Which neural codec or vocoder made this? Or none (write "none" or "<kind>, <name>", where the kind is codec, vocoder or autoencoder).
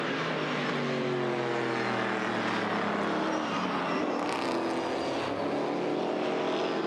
none